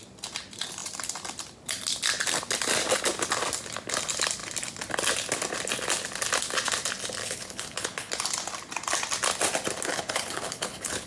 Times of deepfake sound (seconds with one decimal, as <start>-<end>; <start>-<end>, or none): 7.2-8.1; 9.9-11.1